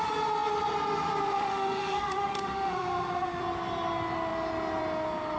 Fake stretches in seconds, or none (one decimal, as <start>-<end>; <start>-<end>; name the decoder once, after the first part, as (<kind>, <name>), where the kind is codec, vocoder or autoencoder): 1.3-3.4 (autoencoder, DAC-VAE)